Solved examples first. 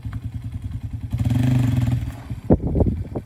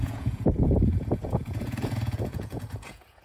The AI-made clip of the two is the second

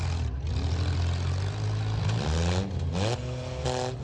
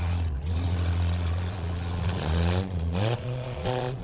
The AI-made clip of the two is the second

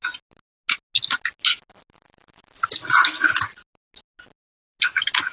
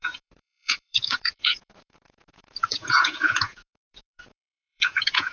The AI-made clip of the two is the second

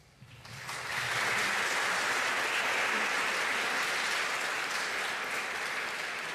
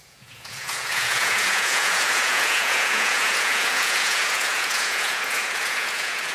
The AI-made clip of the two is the second